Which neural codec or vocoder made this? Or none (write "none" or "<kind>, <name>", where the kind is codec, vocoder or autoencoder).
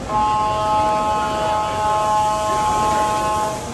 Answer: none